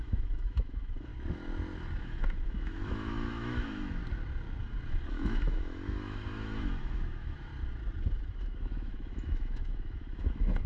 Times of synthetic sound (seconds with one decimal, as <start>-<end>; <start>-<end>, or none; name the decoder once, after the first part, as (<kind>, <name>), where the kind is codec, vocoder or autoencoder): 0.0-1.1 (autoencoder, DAC-VAE); 2.0-4.0; 5.1-7.5; 8.3-10.7